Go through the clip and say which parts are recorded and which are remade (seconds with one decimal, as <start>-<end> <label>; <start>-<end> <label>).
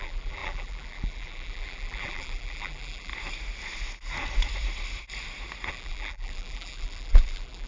0.0-3.1 remade; 3.1-5.7 recorded; 5.7-7.7 remade